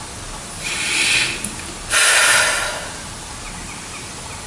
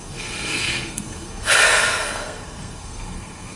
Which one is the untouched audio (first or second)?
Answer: first